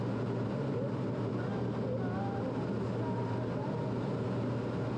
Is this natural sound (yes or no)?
yes